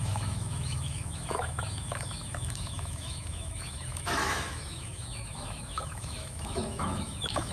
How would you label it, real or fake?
fake